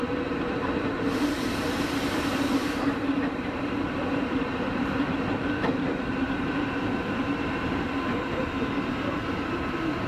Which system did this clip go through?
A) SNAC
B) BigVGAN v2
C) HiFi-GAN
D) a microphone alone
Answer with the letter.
B